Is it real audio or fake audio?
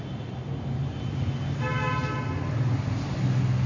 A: real